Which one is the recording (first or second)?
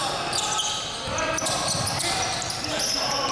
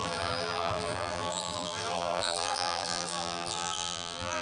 first